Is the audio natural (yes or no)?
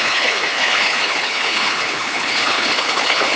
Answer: no